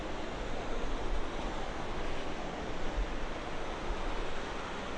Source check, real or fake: real